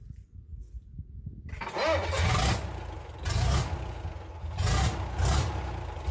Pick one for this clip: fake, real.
real